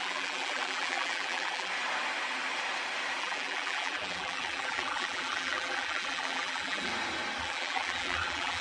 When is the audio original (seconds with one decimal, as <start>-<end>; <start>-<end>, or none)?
1.7-3.2; 6.9-7.4